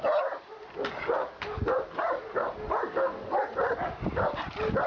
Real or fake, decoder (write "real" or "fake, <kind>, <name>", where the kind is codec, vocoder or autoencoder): real